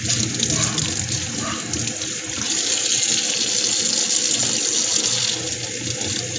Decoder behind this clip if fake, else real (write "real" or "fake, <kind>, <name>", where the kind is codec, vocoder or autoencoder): real